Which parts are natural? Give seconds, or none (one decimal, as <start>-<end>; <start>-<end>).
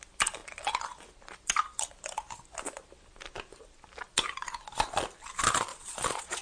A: 0.0-5.7